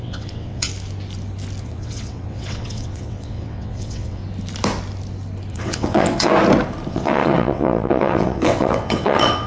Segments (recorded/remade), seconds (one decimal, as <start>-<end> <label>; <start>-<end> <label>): 0.0-0.7 remade; 0.7-1.6 recorded; 1.6-4.2 remade; 4.2-5.5 recorded; 5.5-6.3 remade; 6.3-6.9 recorded; 6.9-9.5 remade